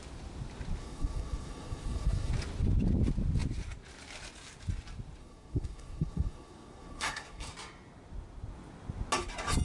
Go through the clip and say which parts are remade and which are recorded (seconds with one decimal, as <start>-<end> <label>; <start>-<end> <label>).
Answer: 0.0-0.8 recorded; 0.8-2.3 remade; 2.3-5.2 recorded; 5.2-7.5 remade; 7.5-9.6 recorded